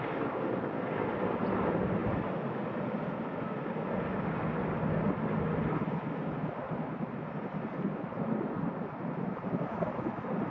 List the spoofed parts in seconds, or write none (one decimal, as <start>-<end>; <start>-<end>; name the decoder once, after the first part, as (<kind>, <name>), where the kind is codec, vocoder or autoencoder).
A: none